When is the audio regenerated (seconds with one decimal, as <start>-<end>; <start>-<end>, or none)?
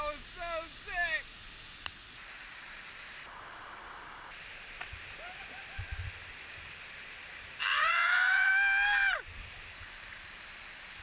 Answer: 2.0-2.9; 7.7-8.5